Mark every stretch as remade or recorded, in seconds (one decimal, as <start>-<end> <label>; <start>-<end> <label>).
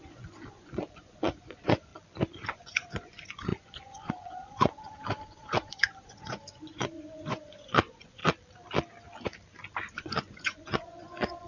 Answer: 0.0-1.9 remade; 1.9-2.5 recorded; 2.5-8.2 remade; 8.2-9.9 recorded; 9.9-11.5 remade